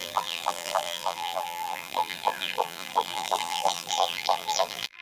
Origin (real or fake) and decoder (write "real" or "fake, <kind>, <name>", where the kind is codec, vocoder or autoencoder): fake, vocoder, BigVGAN v2